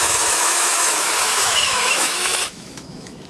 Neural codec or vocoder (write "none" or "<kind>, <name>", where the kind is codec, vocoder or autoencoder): autoencoder, DAC-VAE